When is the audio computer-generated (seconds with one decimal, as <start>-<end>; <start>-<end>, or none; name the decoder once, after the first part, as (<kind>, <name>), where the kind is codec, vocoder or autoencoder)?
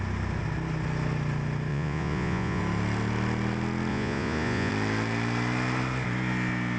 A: 1.7-2.6 (vocoder, Vocos); 3.9-4.7